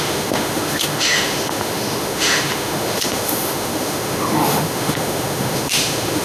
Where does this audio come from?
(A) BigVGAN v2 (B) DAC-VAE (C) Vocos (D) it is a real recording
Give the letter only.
B